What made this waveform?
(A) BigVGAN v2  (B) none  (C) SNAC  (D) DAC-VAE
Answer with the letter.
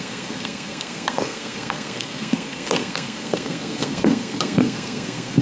C